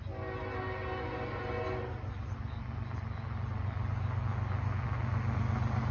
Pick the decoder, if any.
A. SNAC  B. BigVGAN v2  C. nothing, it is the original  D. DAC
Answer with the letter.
C